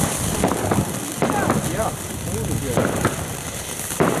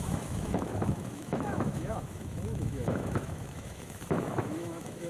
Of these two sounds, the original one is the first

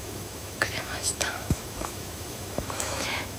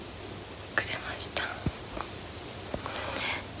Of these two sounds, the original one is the second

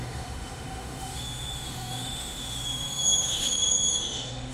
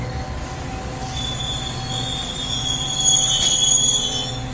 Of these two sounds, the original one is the second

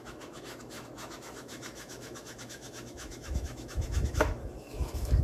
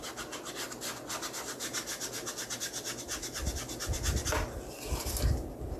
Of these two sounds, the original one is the second